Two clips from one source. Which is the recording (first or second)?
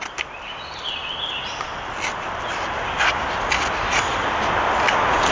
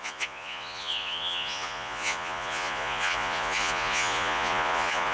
first